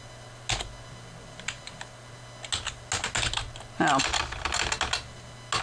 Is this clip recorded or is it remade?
recorded